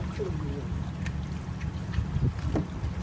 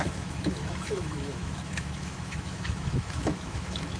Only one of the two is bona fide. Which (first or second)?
first